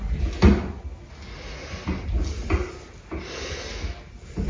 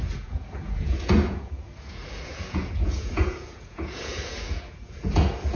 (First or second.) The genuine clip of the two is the first